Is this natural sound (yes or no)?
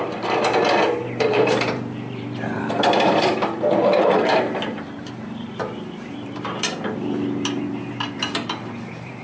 no